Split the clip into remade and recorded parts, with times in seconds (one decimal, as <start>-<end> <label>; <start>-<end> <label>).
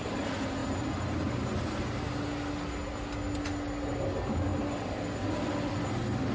0.0-6.3 recorded